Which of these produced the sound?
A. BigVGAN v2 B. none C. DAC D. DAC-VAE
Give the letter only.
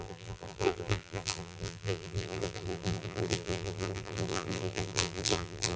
A